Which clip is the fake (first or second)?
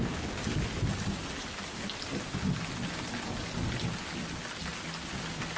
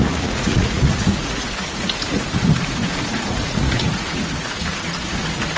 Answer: second